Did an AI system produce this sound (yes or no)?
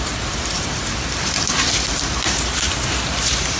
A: no